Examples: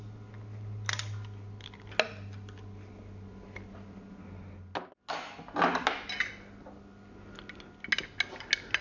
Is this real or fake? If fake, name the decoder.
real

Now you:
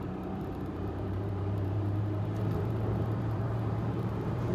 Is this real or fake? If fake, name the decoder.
fake, vocoder, BigVGAN v2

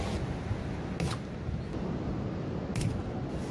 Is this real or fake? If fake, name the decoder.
real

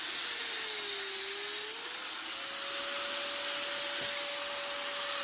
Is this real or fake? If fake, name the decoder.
real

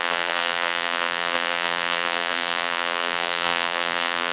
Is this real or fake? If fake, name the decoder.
fake, vocoder, BigVGAN v2